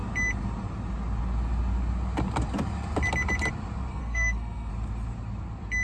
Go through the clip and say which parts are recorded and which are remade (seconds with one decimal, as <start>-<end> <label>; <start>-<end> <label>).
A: 0.0-3.9 recorded; 3.9-4.7 remade; 4.7-5.8 recorded